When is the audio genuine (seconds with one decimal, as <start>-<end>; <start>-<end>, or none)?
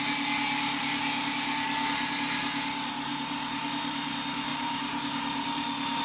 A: 0.0-3.1; 4.1-4.5